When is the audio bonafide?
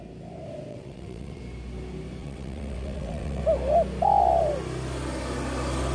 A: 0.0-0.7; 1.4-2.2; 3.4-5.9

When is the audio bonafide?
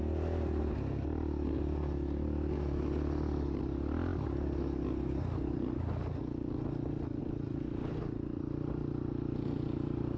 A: 0.0-10.2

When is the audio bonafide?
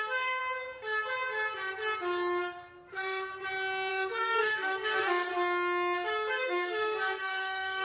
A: 0.4-2.9; 3.3-3.9; 5.3-6.3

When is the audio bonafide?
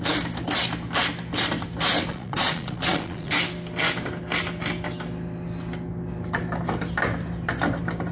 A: 0.0-2.1; 3.3-8.1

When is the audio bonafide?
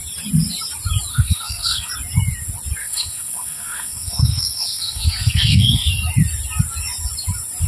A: 0.0-1.1; 1.9-2.8; 5.9-7.7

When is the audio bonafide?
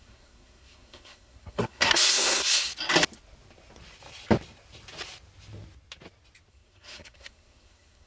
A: 2.7-6.5